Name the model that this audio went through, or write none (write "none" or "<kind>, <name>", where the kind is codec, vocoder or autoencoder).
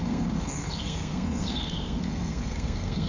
codec, SNAC